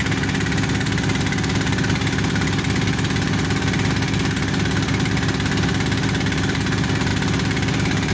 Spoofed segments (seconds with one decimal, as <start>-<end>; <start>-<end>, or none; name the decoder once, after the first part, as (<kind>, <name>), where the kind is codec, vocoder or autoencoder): none